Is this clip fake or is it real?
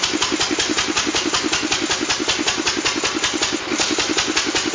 real